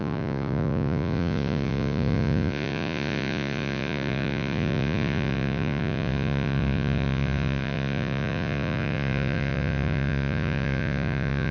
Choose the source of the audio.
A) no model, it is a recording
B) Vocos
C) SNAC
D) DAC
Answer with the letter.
B